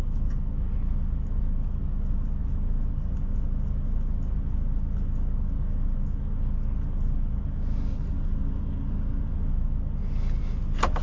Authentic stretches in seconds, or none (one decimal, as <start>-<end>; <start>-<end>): 0.0-11.0